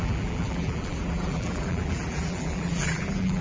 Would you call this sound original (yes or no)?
no